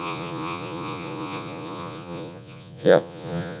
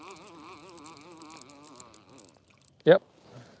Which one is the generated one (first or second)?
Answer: first